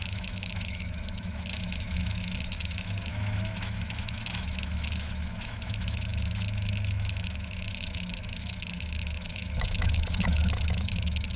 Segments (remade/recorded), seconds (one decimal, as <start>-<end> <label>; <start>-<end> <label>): 0.0-11.4 remade